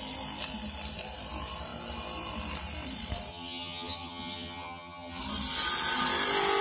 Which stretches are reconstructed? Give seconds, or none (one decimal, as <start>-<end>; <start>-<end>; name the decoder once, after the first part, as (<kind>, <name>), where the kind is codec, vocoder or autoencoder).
3.3-5.2 (vocoder, HiFi-GAN)